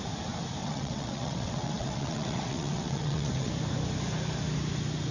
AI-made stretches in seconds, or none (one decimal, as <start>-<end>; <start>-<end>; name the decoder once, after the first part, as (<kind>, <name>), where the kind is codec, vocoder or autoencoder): 0.6-3.5 (vocoder, WaveNeXt)